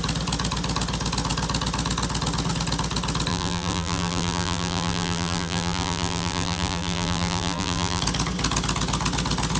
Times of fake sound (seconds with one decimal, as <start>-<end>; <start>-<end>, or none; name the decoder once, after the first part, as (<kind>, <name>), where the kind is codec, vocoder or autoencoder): 3.3-8.0 (vocoder, BigVGAN v2)